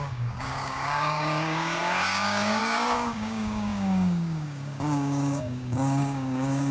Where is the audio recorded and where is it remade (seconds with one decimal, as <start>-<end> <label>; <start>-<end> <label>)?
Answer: 0.0-6.7 remade

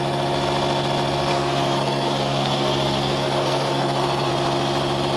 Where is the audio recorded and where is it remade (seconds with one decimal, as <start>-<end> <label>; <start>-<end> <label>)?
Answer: 0.0-1.3 recorded; 1.3-4.3 remade; 4.3-5.2 recorded

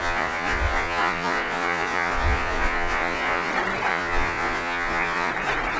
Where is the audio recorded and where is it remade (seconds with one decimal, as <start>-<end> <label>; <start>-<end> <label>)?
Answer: 0.0-3.5 remade; 3.5-3.9 recorded; 3.9-5.3 remade; 5.3-5.8 recorded

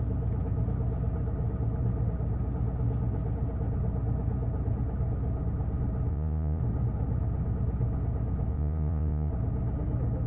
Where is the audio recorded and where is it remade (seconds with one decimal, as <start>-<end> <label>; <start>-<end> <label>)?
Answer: 0.0-6.1 recorded; 6.1-6.6 remade; 6.6-8.5 recorded; 8.5-9.3 remade; 9.3-10.3 recorded

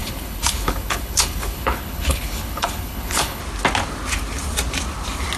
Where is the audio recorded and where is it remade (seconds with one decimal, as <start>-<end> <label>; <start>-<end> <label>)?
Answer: 0.0-3.4 remade; 3.4-5.4 recorded

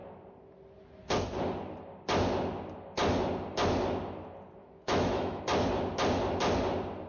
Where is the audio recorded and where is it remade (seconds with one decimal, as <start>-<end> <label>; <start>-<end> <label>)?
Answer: 0.0-4.6 recorded; 4.6-5.4 remade; 5.4-7.1 recorded

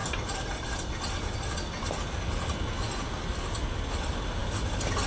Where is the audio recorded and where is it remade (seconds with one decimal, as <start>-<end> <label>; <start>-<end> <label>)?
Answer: 0.0-5.1 recorded

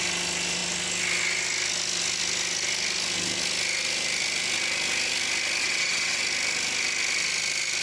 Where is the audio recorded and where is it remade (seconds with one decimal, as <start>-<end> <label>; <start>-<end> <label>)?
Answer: 0.0-5.6 recorded; 5.6-6.2 remade; 6.2-7.8 recorded